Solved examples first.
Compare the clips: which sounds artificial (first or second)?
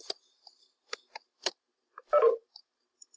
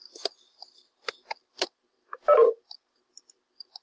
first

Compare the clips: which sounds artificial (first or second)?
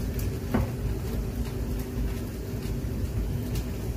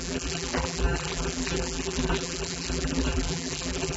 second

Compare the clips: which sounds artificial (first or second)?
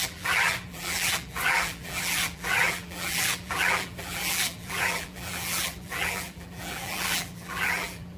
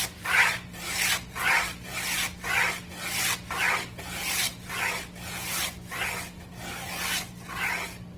first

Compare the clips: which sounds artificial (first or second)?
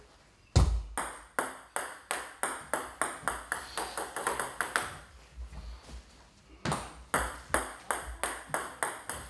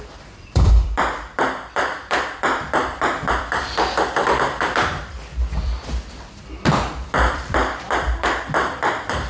second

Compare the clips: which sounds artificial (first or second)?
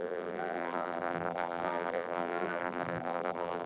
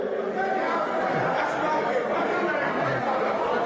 first